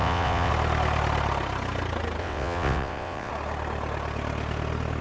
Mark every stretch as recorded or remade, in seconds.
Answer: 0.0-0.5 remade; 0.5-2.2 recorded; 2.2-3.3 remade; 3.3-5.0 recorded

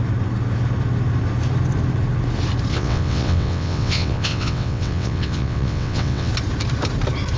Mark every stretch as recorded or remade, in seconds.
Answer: 0.0-2.7 recorded; 2.7-6.3 remade; 6.3-7.4 recorded

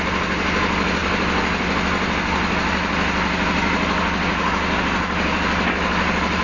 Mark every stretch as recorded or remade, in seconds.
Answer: 0.0-6.4 recorded

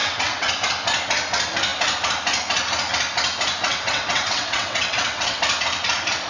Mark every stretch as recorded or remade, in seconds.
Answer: 0.0-0.5 remade; 0.5-3.7 recorded; 3.7-5.4 remade; 5.4-6.3 recorded

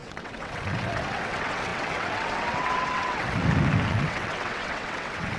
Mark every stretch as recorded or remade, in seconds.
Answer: 0.0-3.4 remade; 3.4-3.9 recorded; 3.9-5.4 remade

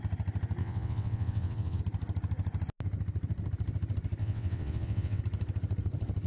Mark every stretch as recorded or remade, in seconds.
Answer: 0.0-0.6 recorded; 0.6-1.8 remade; 1.8-4.2 recorded; 4.2-5.2 remade; 5.2-6.3 recorded

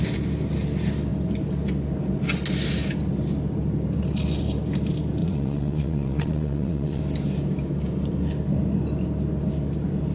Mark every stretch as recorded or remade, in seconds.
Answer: 0.0-5.2 recorded; 5.2-7.0 remade; 7.0-10.1 recorded